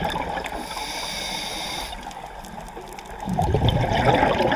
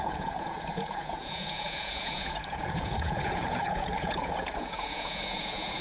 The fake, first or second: second